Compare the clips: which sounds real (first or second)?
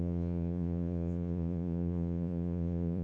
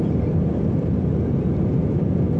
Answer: second